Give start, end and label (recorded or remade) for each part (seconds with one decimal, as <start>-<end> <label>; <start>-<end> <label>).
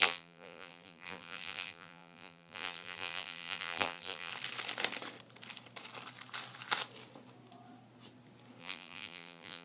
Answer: 0.0-4.3 remade; 4.3-8.6 recorded; 8.6-9.6 remade